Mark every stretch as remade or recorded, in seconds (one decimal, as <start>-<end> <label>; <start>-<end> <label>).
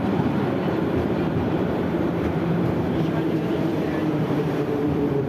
0.0-5.3 remade